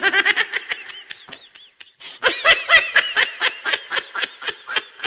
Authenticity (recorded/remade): recorded